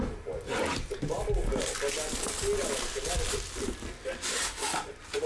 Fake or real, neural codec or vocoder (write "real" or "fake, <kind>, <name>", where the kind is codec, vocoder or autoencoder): real